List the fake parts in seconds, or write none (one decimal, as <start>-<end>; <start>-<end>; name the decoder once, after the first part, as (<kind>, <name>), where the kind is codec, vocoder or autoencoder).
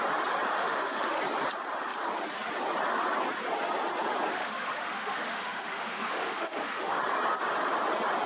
0.6-1.2 (autoencoder, DAC-VAE); 4.3-7.0